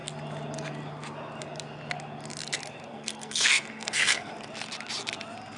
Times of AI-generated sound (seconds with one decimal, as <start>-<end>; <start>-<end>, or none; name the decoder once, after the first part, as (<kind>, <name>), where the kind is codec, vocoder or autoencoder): 2.9-4.3 (codec, SNAC)